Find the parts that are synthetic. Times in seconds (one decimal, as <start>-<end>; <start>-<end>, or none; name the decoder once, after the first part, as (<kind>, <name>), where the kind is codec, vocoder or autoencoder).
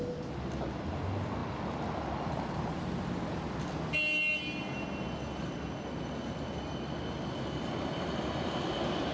none